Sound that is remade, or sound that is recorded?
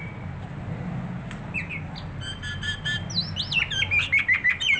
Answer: recorded